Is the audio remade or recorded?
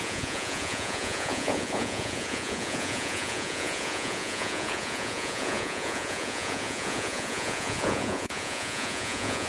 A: remade